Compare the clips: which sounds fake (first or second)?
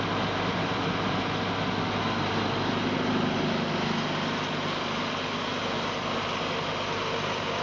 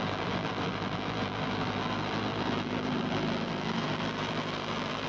second